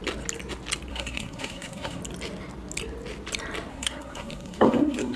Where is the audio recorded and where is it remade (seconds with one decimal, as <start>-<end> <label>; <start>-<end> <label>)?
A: 0.0-0.9 recorded; 0.9-2.0 remade; 2.0-3.7 recorded; 3.7-5.2 remade